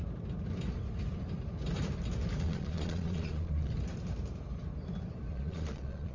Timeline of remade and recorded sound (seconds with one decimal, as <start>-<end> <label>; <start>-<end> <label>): 0.0-2.4 recorded; 2.4-3.7 remade; 3.7-5.3 recorded; 5.3-6.1 remade